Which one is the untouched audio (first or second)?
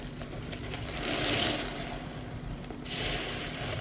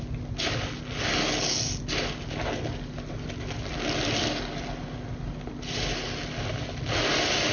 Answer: second